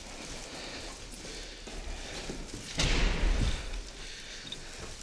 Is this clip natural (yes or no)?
yes